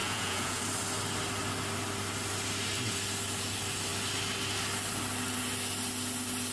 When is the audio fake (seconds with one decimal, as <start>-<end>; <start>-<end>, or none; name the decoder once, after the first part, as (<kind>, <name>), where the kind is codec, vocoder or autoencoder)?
0.0-0.6 (vocoder, Vocos)